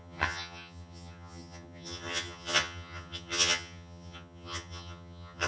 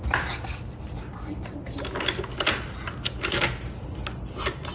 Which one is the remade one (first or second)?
first